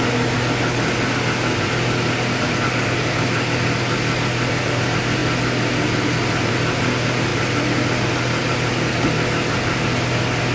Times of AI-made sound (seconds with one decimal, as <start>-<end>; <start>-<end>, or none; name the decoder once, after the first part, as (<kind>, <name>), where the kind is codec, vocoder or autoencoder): none